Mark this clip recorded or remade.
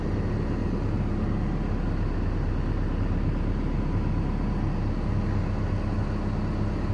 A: recorded